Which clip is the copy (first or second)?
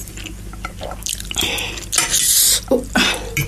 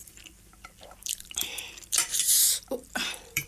second